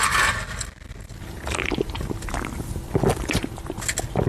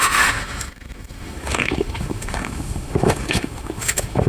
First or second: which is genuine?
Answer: first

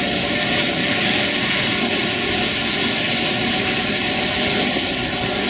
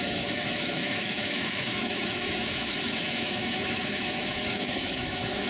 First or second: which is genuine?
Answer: first